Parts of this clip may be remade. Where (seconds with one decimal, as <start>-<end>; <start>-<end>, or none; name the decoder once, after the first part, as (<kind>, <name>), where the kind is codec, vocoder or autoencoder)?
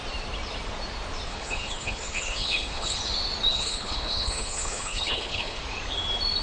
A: 1.3-3.0 (codec, HILCodec); 3.5-5.6